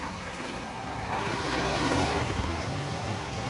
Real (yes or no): no